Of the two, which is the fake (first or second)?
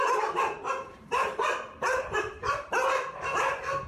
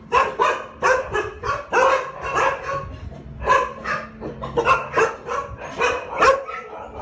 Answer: first